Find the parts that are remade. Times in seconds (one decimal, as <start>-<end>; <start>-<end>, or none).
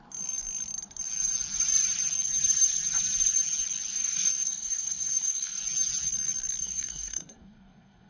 3.9-5.6; 6.6-8.1